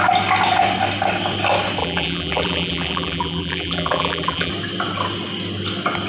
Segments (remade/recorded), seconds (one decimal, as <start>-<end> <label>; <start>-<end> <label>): 0.0-1.8 recorded; 1.8-4.5 remade; 4.5-6.1 recorded